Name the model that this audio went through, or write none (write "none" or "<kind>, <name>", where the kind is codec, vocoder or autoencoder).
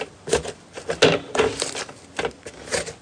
none